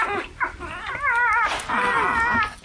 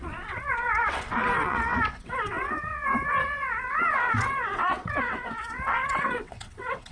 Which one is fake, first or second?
second